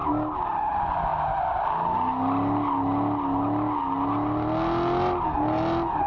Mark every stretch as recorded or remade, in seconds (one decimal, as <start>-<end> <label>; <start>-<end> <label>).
0.0-6.1 recorded